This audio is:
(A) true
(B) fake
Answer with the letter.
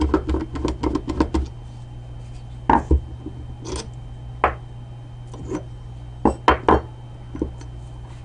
A